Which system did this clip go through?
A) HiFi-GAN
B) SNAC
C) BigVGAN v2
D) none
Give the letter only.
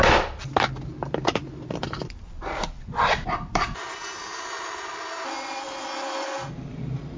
C